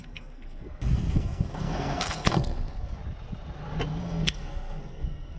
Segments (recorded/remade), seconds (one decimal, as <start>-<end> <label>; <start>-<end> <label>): 0.0-3.0 remade; 3.0-4.0 recorded; 4.0-5.4 remade